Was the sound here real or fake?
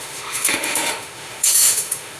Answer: fake